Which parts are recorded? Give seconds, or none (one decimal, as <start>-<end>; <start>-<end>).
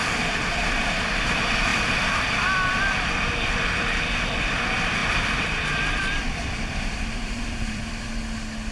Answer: 0.0-1.7; 2.7-5.0; 8.2-8.7